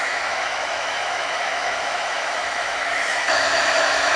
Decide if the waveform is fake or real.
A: fake